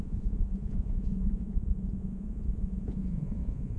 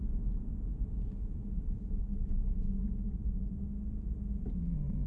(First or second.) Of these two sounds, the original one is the second